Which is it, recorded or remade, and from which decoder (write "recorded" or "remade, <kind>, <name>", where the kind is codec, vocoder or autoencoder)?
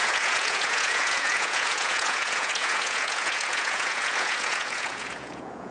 remade, vocoder, Vocos